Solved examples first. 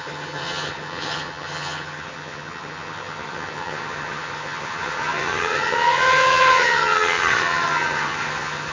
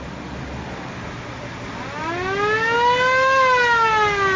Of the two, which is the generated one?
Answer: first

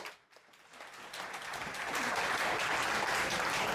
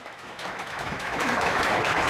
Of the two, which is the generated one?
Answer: second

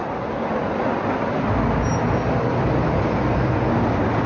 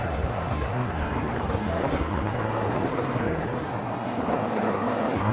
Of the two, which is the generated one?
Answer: second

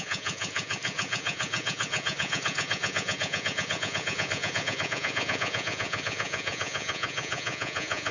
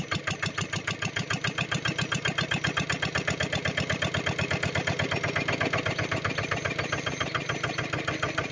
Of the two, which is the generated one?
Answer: first